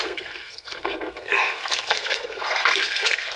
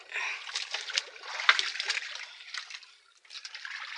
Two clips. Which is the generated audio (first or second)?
first